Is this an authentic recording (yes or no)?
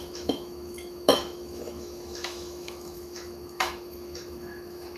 no